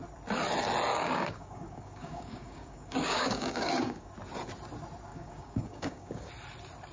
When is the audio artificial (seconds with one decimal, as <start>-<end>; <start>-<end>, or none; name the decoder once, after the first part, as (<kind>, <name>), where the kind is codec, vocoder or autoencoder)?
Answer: 0.9-4.1 (codec, DAC); 5.1-6.3